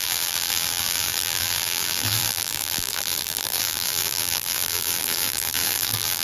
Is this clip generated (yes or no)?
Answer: yes